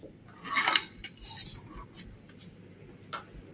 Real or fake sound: real